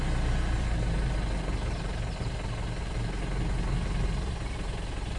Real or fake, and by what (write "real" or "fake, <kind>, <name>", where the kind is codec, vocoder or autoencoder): real